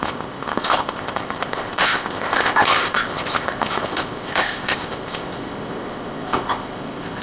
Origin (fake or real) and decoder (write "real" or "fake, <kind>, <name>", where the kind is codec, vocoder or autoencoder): fake, codec, ZipCodec